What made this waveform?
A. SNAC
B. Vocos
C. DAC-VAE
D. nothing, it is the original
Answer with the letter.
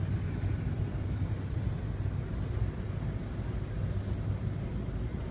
D